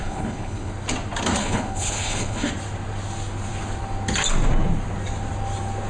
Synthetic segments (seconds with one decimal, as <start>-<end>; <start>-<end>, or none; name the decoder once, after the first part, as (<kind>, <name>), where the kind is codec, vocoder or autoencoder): 0.0-0.7 (codec, HILCodec); 1.4-2.5